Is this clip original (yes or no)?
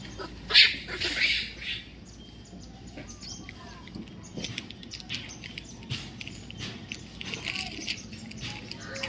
yes